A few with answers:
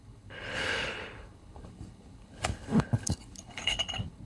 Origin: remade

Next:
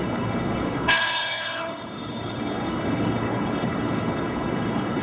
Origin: remade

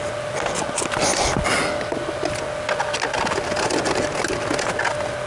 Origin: recorded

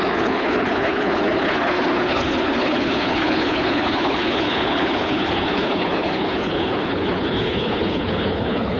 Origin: remade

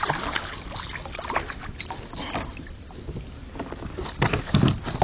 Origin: recorded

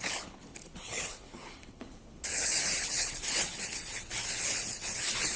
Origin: remade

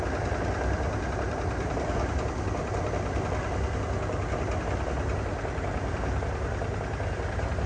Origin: recorded